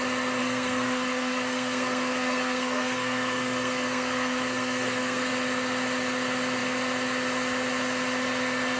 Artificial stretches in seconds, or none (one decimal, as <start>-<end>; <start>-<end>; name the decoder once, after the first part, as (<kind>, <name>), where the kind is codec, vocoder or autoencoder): 0.4-5.3 (codec, SNAC)